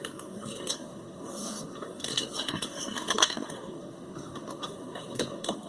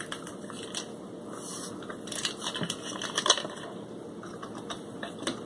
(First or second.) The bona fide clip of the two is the second